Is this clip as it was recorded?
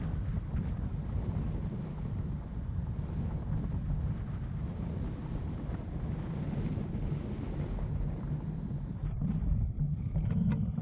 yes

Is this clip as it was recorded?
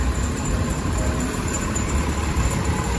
no